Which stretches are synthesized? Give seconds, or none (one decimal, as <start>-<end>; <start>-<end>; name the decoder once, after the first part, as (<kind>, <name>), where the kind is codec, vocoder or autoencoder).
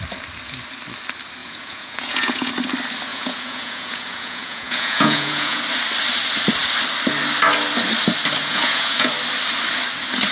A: 1.4-2.5 (vocoder, Vocos); 3.1-5.6; 8.4-9.1